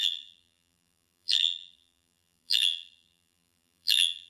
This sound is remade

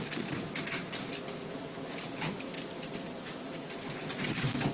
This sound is recorded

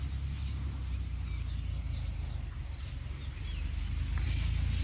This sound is recorded